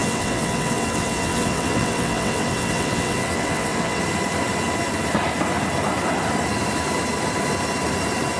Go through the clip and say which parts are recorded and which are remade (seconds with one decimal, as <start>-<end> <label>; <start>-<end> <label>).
0.0-4.0 remade; 4.0-8.4 recorded

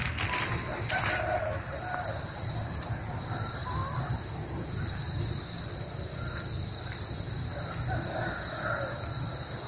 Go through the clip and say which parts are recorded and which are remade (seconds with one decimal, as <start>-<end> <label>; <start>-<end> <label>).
0.0-9.7 recorded

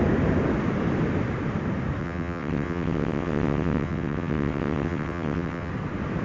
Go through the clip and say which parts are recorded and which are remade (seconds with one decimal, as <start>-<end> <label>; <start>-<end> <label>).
0.0-2.0 recorded; 2.0-5.7 remade; 5.7-6.2 recorded

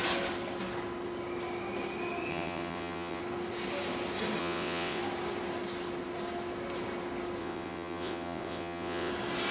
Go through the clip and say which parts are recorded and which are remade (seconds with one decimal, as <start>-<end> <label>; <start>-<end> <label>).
0.0-2.3 recorded; 2.3-3.2 remade; 3.2-4.4 recorded; 4.4-5.0 remade; 5.0-7.4 recorded; 7.4-9.1 remade; 9.1-9.5 recorded